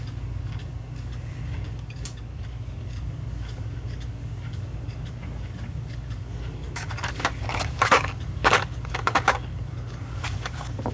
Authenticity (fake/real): fake